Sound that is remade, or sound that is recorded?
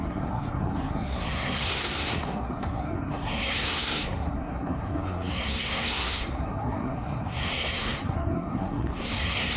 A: remade